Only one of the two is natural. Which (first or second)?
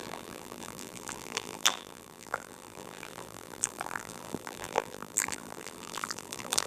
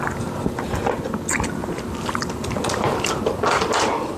second